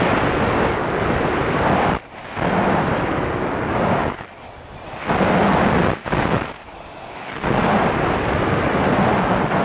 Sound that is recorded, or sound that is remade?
recorded